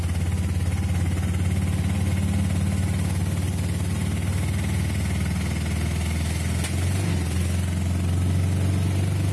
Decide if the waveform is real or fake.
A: real